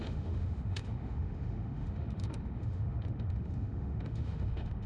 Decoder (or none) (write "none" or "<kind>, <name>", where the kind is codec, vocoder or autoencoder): autoencoder, DAC-VAE